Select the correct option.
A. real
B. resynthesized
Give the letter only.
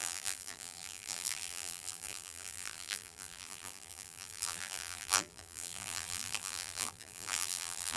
B